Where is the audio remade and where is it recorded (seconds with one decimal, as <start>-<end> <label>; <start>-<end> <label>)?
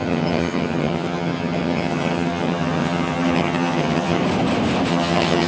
0.0-4.2 remade; 4.2-4.9 recorded; 4.9-5.5 remade